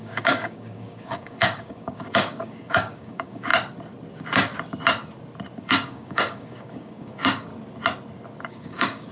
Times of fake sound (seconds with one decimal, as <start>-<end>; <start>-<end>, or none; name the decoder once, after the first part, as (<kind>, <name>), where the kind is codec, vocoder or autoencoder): 0.0-3.5 (codec, DAC); 4.1-4.5; 5.6-7.5; 8.4-9.1